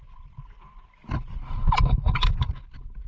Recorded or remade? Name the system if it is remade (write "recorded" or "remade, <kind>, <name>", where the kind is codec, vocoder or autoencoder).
recorded